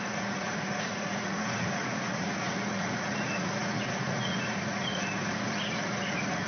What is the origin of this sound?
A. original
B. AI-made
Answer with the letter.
B